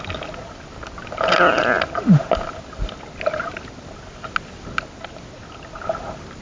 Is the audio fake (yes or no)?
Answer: no